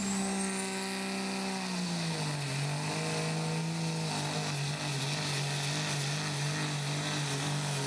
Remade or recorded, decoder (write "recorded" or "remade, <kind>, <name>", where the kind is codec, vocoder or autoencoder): recorded